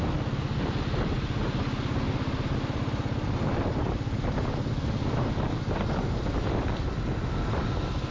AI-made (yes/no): no